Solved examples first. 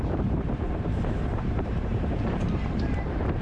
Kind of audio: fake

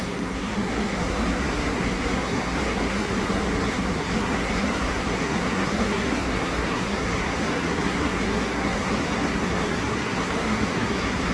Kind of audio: fake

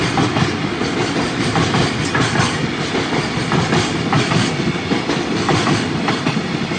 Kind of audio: real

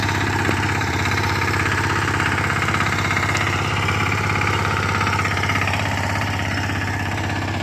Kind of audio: fake